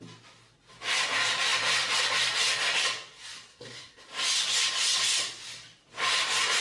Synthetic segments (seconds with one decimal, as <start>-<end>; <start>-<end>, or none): 3.5-4.0